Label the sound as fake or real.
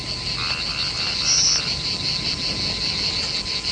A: real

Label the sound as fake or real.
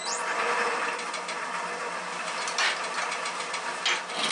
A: real